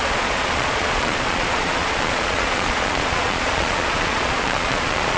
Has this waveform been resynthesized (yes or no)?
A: yes